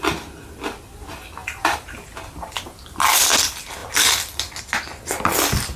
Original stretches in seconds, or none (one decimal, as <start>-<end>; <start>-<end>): 0.0-1.4; 2.6-5.8